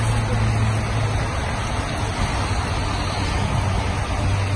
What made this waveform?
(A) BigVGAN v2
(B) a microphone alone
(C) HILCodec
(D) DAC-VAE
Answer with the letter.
B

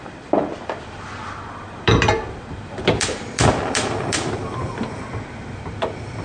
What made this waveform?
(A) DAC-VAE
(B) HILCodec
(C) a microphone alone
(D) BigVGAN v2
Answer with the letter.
D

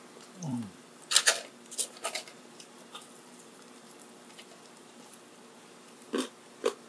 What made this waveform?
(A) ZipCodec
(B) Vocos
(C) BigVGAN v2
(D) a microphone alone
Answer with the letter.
C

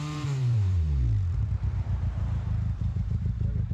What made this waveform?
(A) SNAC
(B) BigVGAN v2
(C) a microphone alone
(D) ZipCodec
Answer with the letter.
B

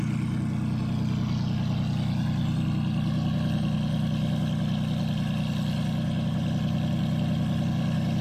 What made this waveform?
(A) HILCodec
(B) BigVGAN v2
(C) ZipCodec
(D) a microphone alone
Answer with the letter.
D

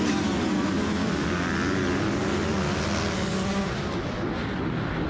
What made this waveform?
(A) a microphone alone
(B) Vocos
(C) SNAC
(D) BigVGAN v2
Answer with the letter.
A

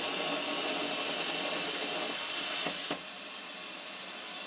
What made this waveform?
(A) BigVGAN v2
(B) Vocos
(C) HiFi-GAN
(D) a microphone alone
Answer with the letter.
D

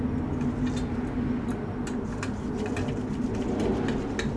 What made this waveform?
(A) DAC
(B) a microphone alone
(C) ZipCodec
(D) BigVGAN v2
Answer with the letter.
B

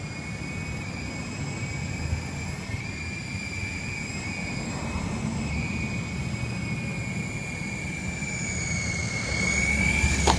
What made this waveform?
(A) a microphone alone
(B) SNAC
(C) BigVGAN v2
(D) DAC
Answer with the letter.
A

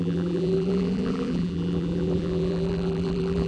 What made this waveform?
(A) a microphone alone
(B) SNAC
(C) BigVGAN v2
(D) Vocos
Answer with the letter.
C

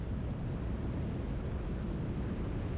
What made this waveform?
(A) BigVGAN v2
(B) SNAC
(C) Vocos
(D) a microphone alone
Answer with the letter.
D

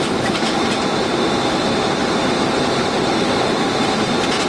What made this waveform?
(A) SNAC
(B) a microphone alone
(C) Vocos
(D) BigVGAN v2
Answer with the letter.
D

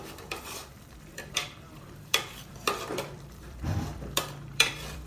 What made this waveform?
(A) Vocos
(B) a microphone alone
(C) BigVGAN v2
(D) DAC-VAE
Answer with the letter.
C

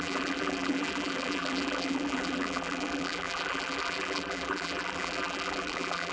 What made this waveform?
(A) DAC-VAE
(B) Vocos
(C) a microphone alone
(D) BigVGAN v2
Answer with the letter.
D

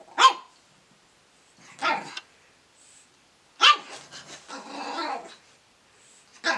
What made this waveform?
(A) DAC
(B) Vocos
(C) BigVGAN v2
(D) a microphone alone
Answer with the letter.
D